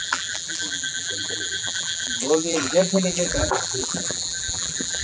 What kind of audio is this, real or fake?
fake